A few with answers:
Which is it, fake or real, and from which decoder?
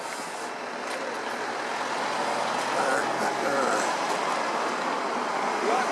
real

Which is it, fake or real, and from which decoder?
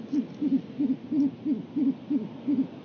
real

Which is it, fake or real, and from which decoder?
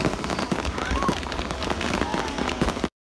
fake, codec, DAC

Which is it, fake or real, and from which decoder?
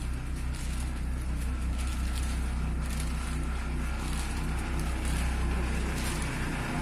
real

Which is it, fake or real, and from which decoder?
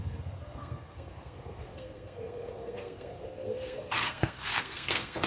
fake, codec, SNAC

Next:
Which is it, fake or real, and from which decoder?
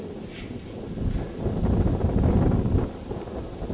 real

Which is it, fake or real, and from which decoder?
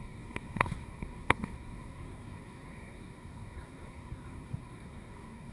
fake, codec, SNAC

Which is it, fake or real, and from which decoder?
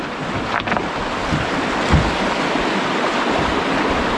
real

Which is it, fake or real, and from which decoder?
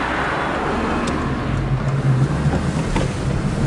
real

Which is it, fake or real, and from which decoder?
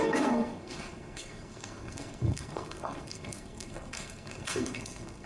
fake, codec, SNAC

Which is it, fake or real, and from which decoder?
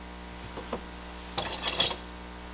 real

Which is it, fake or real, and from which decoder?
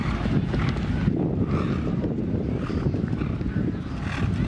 real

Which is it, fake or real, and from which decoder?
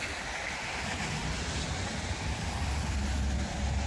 real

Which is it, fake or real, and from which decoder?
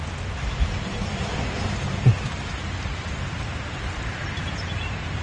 real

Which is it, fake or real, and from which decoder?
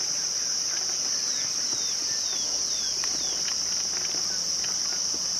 real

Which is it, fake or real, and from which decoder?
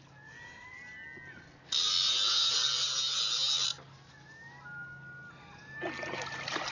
real